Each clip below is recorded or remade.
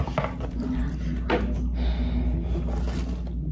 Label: recorded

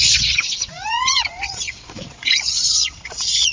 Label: remade